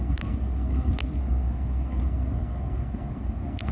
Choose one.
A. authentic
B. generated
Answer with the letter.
B